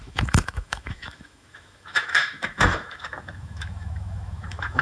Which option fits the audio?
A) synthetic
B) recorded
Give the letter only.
A